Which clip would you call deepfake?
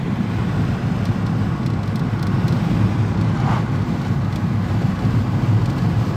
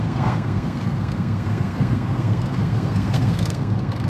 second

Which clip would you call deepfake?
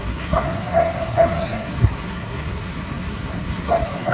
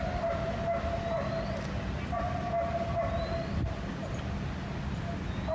first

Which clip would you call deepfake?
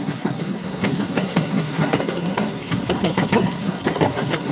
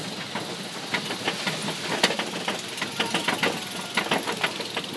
first